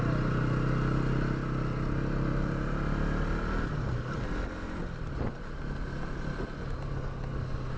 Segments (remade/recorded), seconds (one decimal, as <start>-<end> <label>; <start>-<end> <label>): 0.0-7.8 recorded